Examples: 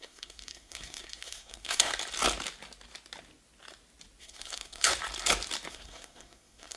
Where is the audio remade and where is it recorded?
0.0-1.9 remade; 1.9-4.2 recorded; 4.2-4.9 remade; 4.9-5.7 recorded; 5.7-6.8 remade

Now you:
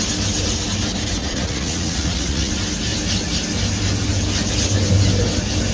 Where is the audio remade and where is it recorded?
0.0-1.2 recorded; 1.2-2.5 remade; 2.5-5.7 recorded

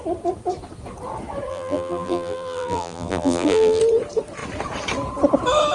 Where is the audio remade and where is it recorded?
0.0-1.5 recorded; 1.5-3.8 remade; 3.8-5.7 recorded

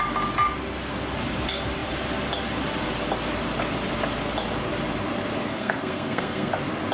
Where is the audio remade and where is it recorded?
0.0-5.4 recorded; 5.4-6.5 remade; 6.5-6.9 recorded

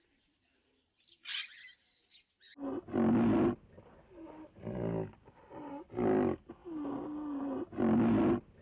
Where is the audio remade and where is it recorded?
0.0-8.6 recorded

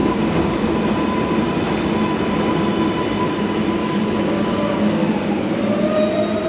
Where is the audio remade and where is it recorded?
0.0-0.7 remade; 0.7-3.8 recorded; 3.8-5.4 remade; 5.4-6.5 recorded

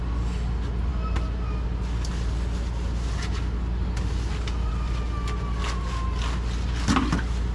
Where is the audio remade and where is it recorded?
0.0-7.5 recorded